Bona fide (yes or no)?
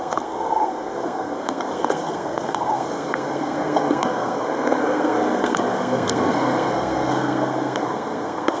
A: no